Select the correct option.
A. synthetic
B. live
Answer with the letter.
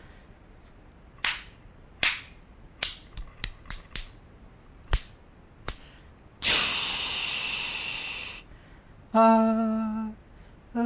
B